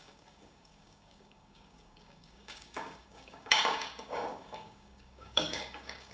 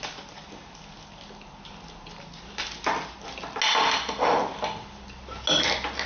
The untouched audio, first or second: second